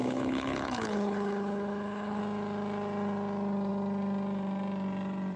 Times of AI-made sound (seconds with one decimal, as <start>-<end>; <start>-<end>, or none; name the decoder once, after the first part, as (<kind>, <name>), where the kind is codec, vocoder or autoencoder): 0.0-2.2 (codec, HILCodec)